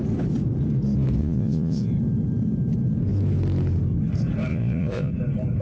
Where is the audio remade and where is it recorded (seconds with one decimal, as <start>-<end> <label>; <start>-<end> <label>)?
0.0-1.2 recorded; 1.2-1.9 remade; 1.9-4.5 recorded; 4.5-5.1 remade; 5.1-5.6 recorded